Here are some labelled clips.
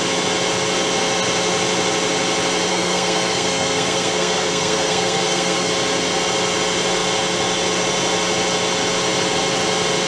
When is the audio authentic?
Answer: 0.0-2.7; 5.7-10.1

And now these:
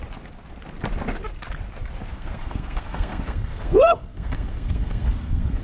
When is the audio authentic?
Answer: 0.0-2.1

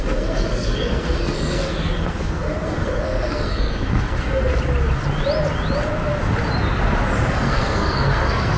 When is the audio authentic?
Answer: 4.5-7.3

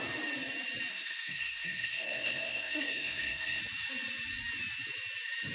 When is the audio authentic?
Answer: 0.0-0.9; 3.6-5.5

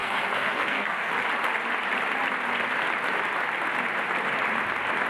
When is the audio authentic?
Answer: 1.1-5.1

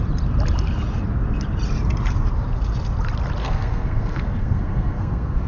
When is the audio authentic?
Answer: 0.0-3.4

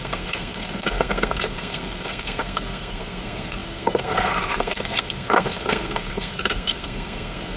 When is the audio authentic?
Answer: none